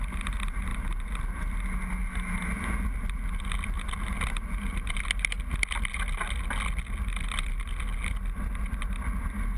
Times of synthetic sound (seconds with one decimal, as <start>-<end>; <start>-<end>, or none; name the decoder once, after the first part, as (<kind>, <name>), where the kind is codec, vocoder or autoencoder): none